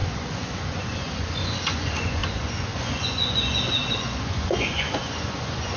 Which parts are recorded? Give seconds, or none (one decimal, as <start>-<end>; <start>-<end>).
none